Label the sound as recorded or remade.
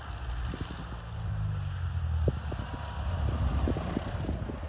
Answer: recorded